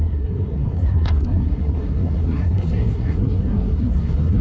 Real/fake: fake